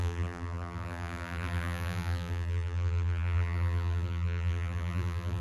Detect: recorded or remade remade